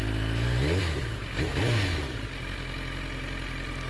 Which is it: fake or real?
real